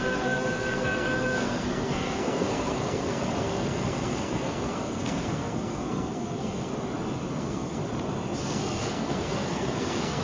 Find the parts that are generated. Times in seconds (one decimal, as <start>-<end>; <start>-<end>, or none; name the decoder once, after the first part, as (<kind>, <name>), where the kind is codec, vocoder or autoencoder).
0.0-6.7 (codec, SNAC); 7.3-7.8; 8.4-10.2